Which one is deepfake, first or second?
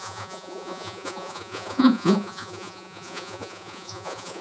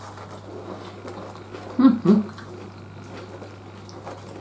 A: first